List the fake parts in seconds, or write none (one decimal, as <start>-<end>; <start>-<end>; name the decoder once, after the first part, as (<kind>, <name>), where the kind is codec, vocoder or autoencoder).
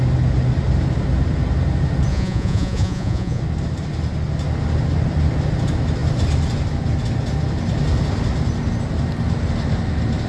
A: 2.1-3.4 (vocoder, Vocos)